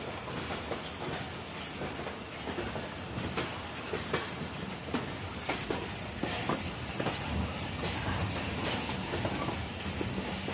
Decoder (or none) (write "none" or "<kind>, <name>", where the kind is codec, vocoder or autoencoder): none